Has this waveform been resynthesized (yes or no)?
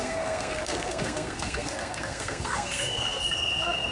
yes